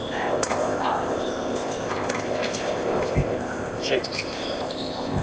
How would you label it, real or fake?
fake